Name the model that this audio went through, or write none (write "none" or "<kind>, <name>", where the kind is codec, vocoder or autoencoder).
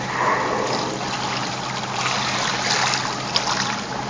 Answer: none